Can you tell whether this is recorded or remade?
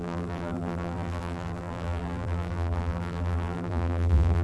remade